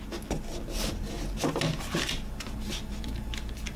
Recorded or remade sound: recorded